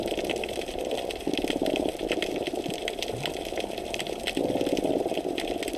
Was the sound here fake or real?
real